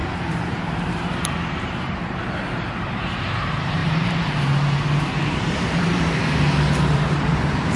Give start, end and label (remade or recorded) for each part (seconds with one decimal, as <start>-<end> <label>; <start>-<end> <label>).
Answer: 0.0-7.8 remade